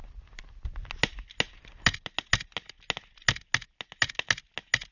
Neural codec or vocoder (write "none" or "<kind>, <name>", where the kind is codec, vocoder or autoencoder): none